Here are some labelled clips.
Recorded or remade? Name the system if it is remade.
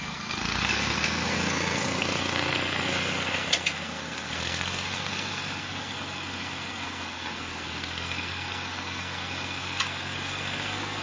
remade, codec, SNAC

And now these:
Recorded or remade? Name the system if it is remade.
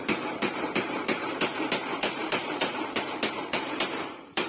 remade, vocoder, BigVGAN v2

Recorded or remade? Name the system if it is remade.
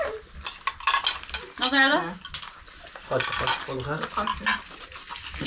recorded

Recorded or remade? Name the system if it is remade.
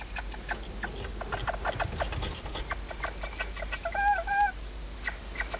recorded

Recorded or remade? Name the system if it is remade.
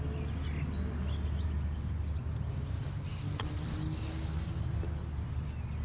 recorded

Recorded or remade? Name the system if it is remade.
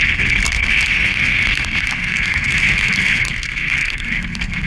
remade, codec, SNAC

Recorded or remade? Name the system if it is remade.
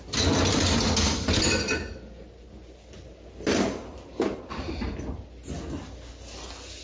recorded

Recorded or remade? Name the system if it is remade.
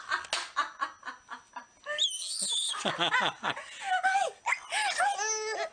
recorded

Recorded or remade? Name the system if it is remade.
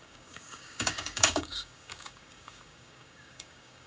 remade, codec, DAC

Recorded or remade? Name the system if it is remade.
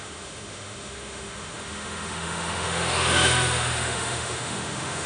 remade, autoencoder, DAC-VAE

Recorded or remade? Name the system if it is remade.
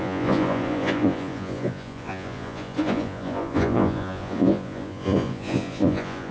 remade, vocoder, Vocos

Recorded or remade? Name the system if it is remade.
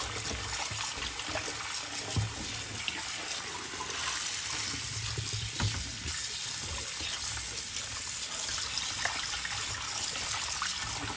recorded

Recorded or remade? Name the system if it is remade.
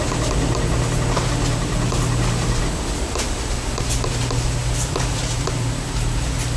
recorded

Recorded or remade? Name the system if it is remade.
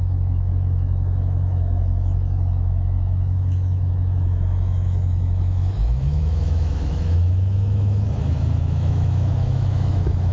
remade, autoencoder, DAC-VAE